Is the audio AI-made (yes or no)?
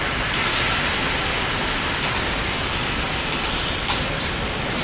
no